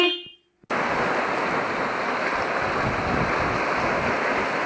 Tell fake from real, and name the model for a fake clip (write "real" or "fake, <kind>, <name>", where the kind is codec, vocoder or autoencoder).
real